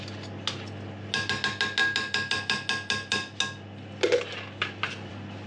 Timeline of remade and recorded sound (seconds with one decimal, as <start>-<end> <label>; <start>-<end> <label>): 0.0-5.5 recorded